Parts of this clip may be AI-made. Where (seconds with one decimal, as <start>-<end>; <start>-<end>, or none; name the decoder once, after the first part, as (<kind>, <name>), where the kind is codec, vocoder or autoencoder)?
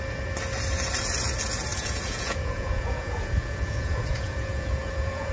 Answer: 1.7-5.3 (vocoder, Vocos)